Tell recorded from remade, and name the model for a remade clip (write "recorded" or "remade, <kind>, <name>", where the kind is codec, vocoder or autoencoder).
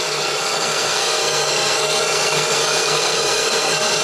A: remade, codec, SNAC